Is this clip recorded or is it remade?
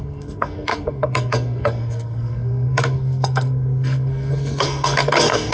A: remade